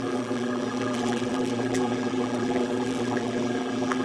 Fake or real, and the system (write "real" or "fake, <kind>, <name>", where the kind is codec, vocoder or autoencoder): fake, vocoder, BigVGAN v2